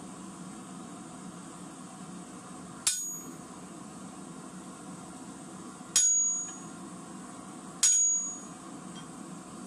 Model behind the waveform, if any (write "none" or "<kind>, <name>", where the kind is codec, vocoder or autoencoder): none